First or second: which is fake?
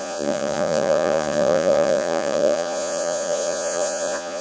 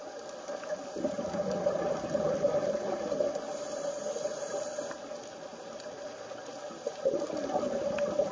first